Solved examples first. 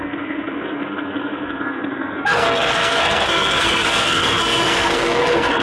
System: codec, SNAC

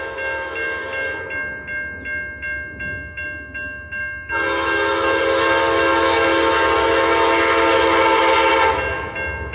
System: none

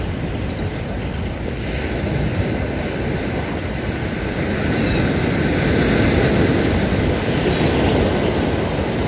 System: none